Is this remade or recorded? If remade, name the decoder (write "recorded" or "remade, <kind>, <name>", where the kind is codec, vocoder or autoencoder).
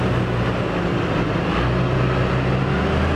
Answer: recorded